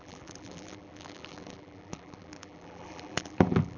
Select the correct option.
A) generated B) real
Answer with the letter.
A